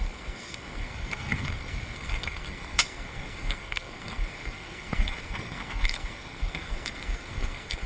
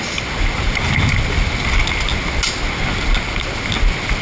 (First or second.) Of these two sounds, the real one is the second